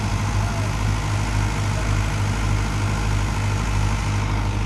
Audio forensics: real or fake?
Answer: real